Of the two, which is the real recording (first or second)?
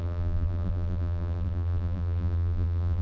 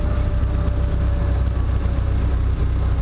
second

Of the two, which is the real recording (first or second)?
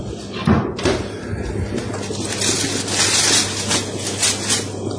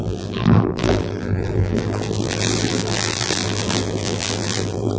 first